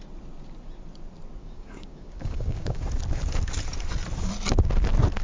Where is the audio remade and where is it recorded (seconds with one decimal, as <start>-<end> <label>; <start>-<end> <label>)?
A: 0.0-1.4 recorded; 1.4-2.8 remade; 2.8-5.2 recorded